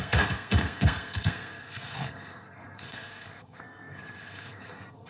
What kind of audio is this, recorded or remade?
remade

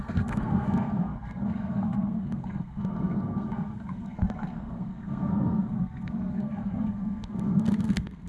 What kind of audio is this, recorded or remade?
remade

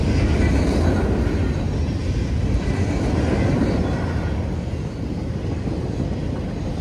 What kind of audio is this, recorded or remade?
recorded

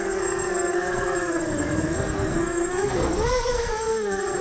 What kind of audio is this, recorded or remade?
remade